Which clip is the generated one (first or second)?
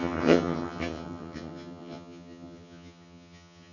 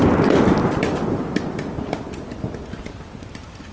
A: first